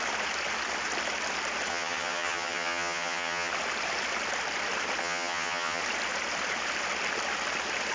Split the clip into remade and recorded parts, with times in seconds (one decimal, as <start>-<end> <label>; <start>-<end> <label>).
0.0-1.7 recorded; 1.7-3.5 remade; 3.5-5.0 recorded; 5.0-5.8 remade; 5.8-7.9 recorded

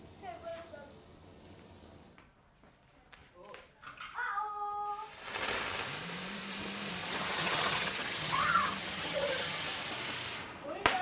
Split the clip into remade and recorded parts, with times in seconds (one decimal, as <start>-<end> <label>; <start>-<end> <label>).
0.0-7.0 recorded; 7.0-9.6 remade; 9.6-11.0 recorded

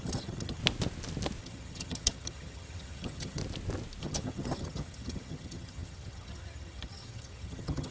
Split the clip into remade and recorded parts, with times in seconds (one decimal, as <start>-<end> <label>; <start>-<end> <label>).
0.0-0.6 remade; 0.6-1.4 recorded; 1.4-3.4 remade; 3.4-4.0 recorded; 4.0-7.9 remade